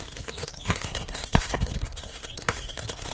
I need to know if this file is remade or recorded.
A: remade